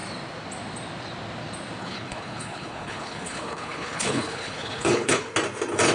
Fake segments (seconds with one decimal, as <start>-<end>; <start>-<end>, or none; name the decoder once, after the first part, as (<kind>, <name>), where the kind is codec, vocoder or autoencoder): 1.8-5.3 (codec, HILCodec)